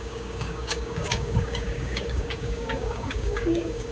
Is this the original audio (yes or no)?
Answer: no